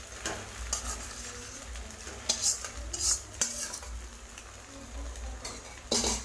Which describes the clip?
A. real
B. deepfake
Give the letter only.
A